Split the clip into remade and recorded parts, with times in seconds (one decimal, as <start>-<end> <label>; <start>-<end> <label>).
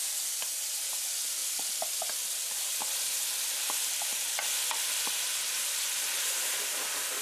0.0-7.2 recorded